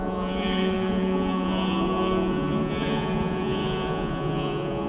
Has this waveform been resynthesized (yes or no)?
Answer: yes